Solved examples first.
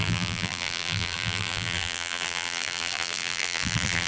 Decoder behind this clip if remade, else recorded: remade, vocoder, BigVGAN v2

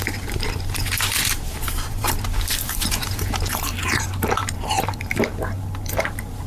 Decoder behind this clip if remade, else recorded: remade, vocoder, BigVGAN v2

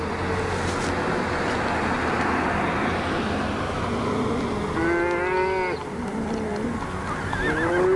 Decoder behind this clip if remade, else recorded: recorded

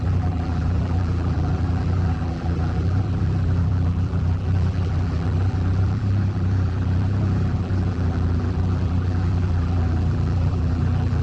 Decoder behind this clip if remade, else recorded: remade, vocoder, BigVGAN v2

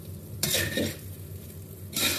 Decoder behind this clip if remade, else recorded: remade, vocoder, BigVGAN v2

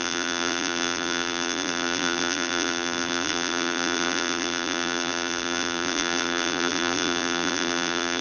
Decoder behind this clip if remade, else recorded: remade, vocoder, BigVGAN v2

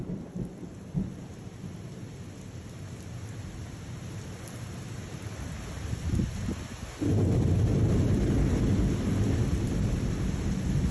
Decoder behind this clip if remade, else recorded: recorded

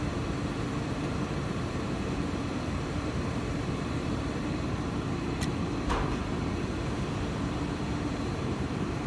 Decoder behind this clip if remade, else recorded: remade, vocoder, BigVGAN v2